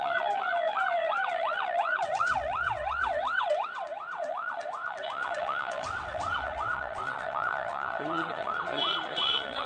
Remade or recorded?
remade